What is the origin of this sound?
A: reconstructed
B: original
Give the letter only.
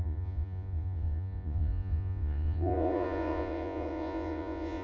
A